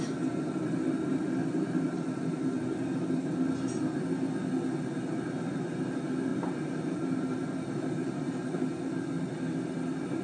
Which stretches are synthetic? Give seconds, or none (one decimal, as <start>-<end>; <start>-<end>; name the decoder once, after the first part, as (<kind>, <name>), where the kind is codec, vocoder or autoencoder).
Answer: 1.1-2.7 (vocoder, BigVGAN v2); 6.3-8.6

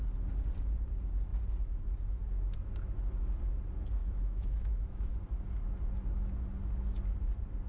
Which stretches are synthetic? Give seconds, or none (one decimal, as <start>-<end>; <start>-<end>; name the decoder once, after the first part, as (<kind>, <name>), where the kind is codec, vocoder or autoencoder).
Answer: 4.0-5.2 (autoencoder, DAC-VAE)

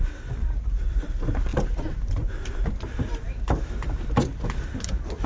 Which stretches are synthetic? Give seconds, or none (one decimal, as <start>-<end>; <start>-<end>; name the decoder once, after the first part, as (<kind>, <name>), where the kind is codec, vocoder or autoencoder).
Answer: 1.5-4.7 (vocoder, BigVGAN v2)

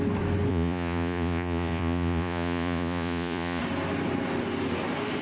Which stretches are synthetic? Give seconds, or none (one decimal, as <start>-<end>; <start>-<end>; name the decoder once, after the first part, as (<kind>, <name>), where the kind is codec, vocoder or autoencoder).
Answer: 0.5-3.6 (vocoder, Vocos)

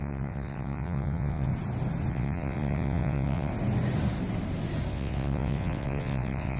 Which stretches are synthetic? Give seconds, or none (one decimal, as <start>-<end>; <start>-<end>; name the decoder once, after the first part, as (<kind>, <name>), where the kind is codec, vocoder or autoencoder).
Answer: 0.0-1.5 (vocoder, WaveNeXt); 2.1-3.5; 4.9-6.6